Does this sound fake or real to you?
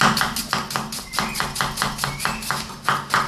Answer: real